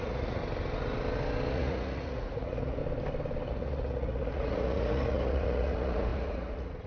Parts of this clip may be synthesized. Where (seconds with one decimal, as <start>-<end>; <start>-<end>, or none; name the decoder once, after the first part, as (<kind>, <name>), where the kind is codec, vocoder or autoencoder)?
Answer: 0.0-0.4 (vocoder, Vocos); 1.5-2.8; 3.5-6.9